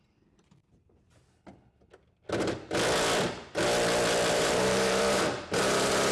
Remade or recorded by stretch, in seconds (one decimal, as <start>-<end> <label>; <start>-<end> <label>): 0.0-0.6 remade; 0.6-4.3 recorded; 4.3-6.1 remade